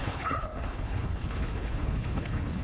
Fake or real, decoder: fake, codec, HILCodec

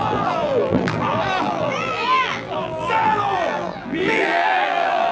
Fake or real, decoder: fake, vocoder, BigVGAN v2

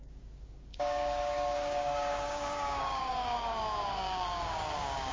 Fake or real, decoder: fake, codec, DAC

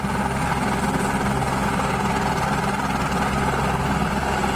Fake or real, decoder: real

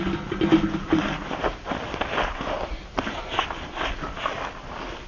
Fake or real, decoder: real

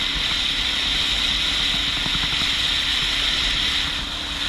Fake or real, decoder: real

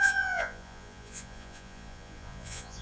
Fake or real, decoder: fake, vocoder, Vocos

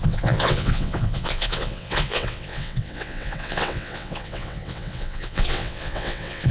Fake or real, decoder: fake, vocoder, WaveNeXt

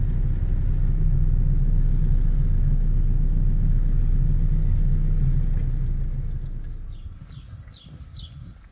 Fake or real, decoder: real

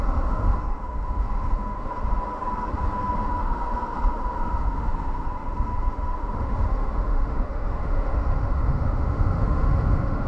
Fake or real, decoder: fake, autoencoder, DAC-VAE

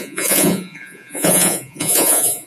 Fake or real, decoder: fake, vocoder, Vocos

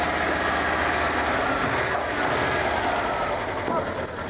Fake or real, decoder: real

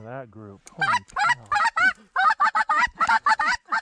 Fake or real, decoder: fake, vocoder, BigVGAN v2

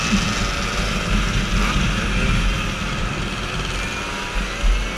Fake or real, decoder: real